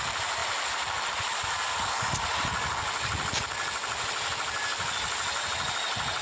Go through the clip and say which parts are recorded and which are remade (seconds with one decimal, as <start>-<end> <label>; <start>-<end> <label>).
0.0-6.2 recorded